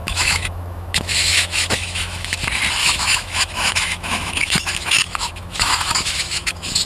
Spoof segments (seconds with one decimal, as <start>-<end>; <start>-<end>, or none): 0.0-2.4; 2.8-6.9